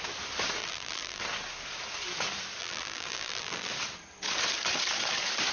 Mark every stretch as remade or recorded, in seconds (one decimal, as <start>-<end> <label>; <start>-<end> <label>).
0.0-0.6 recorded; 0.6-1.2 remade; 1.2-2.6 recorded; 2.6-3.7 remade; 3.7-5.5 recorded